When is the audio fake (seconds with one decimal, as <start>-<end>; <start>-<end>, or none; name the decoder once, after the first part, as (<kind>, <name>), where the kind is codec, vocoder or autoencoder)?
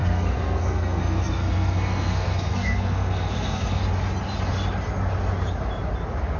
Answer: 0.0-3.8 (codec, SNAC)